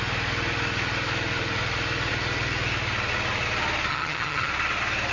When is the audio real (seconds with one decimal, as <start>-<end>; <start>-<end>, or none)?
0.0-3.9; 4.5-5.1